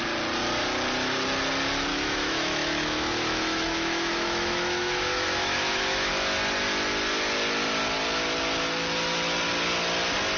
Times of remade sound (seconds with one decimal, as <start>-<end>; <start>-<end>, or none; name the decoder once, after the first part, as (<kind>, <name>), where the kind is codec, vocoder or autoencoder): 1.9-6.1 (autoencoder, DAC-VAE)